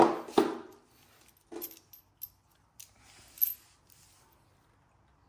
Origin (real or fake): real